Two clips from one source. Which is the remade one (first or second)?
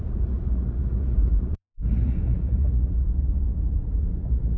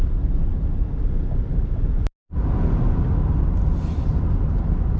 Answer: first